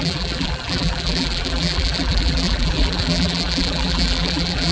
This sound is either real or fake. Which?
fake